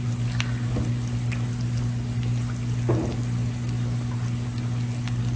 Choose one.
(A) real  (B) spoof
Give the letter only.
A